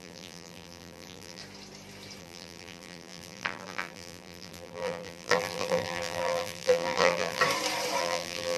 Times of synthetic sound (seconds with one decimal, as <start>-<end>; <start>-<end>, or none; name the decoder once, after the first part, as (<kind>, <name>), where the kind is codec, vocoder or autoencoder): 0.0-1.4 (vocoder, BigVGAN v2); 2.2-7.4; 8.0-8.6